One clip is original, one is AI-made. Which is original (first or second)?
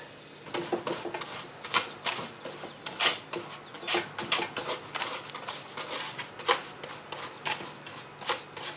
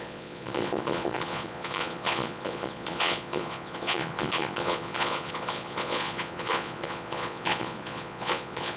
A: first